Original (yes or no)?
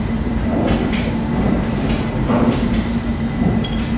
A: no